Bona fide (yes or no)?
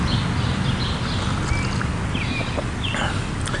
yes